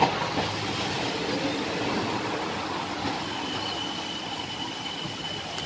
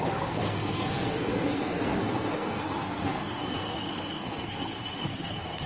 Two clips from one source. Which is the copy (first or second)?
second